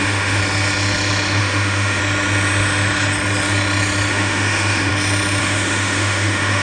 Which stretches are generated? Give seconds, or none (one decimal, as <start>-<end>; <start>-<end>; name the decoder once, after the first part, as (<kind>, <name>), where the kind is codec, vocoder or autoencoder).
0.0-0.4 (autoencoder, DAC-VAE); 1.4-2.0; 4.1-4.9; 5.4-6.6